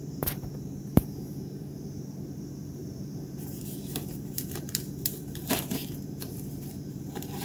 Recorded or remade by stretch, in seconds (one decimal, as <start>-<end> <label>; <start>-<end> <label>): 0.0-7.4 remade